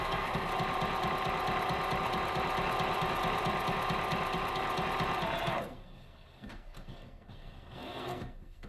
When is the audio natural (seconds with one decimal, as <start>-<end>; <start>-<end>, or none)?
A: 0.5-5.5